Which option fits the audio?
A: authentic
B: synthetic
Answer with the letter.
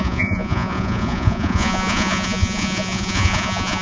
B